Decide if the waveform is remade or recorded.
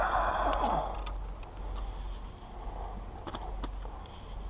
recorded